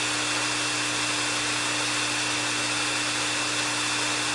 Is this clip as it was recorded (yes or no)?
yes